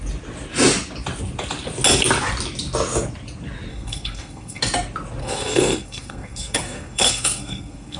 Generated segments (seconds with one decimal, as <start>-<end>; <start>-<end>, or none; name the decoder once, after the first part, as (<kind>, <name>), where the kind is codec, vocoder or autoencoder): 3.7-4.6 (codec, SNAC); 5.2-8.0